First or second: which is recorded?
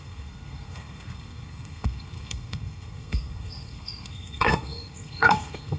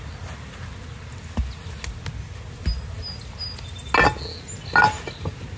second